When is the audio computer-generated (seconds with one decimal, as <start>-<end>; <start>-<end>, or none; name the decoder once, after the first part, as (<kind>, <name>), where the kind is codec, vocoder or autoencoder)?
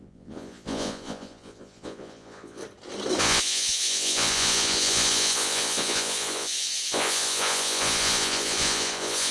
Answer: 0.0-2.6 (vocoder, Vocos); 3.2-9.3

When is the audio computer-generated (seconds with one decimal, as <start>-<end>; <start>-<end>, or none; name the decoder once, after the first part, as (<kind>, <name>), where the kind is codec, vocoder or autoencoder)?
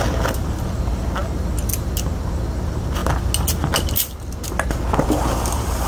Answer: none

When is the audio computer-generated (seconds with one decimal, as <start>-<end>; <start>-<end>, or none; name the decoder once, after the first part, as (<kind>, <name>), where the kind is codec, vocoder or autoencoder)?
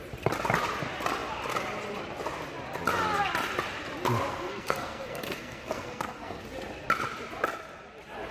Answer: 4.3-6.4 (codec, SNAC)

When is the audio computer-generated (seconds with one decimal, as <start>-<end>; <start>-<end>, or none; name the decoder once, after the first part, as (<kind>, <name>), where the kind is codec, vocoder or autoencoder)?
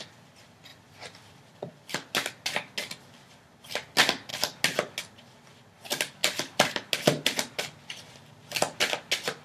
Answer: 0.7-1.9 (vocoder, BigVGAN v2)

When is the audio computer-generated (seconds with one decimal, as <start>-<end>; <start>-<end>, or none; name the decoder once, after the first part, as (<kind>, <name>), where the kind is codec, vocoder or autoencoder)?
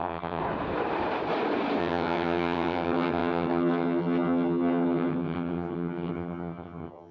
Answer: 0.0-0.4 (vocoder, HiFi-GAN); 1.8-7.1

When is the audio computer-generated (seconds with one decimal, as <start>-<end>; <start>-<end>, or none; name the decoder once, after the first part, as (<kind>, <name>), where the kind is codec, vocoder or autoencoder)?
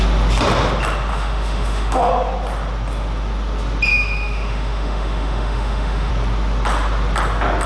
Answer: 1.1-2.1 (autoencoder, DAC-VAE); 3.9-6.1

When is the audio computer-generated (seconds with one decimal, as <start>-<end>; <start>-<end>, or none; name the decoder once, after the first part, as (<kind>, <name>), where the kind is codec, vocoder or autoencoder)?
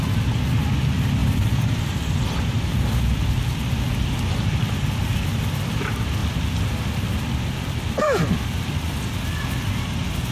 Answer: 1.2-2.6 (vocoder, BigVGAN v2)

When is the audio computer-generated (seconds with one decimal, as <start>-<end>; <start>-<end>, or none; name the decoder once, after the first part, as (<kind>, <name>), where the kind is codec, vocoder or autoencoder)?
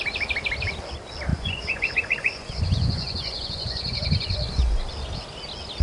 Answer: 1.3-4.8 (vocoder, Vocos)